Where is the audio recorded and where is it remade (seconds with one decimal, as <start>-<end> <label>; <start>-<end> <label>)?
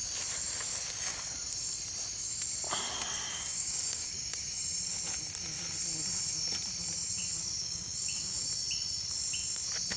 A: 0.0-3.3 recorded; 3.3-4.4 remade; 4.4-7.6 recorded; 7.6-8.4 remade; 8.4-10.0 recorded